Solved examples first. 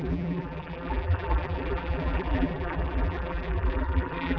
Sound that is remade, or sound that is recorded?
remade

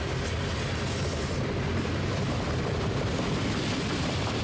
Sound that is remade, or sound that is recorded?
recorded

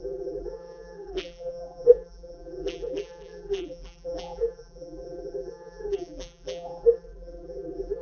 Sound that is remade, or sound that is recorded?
remade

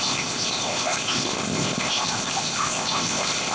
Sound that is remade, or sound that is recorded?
remade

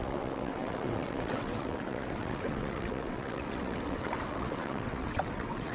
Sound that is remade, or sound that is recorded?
remade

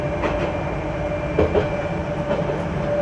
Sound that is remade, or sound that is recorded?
recorded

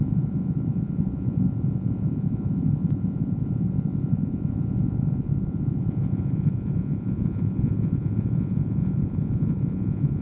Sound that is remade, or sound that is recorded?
remade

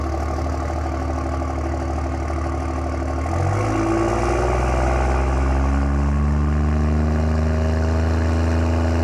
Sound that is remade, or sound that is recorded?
recorded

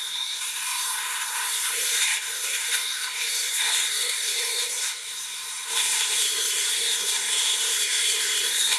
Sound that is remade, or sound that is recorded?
remade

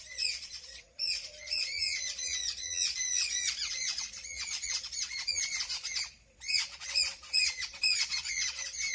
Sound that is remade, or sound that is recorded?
remade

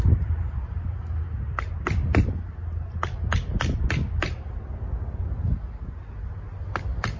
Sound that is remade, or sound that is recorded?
recorded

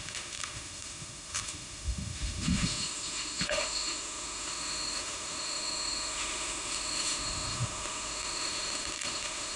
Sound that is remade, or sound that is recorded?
remade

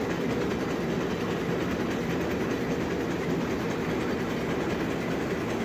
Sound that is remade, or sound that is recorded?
recorded